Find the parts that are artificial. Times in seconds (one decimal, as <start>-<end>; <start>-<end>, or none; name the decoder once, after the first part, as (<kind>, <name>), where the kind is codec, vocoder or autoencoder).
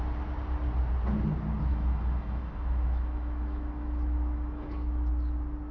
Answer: 1.7-5.1 (autoencoder, DAC-VAE)